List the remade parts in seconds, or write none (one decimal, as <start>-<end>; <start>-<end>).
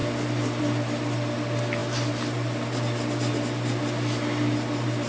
none